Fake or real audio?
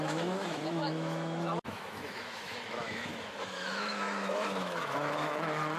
fake